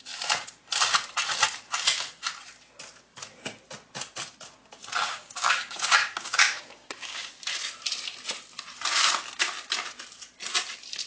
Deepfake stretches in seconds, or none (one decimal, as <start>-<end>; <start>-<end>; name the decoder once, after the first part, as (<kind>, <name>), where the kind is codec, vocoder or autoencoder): 5.0-7.3 (codec, DAC)